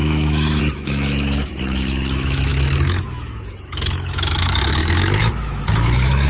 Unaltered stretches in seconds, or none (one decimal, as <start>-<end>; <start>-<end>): none